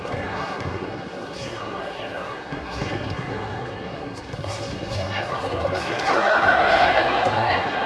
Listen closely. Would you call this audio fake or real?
fake